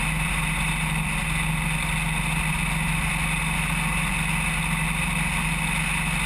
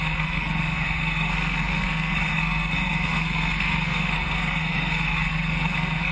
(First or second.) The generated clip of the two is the second